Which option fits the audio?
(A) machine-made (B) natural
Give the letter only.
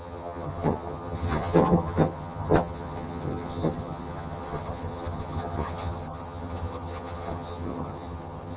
A